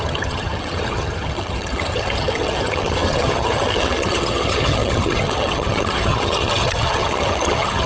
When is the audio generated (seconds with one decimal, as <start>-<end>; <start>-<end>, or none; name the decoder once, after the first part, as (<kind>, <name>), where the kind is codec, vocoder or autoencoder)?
0.0-7.9 (vocoder, HiFi-GAN)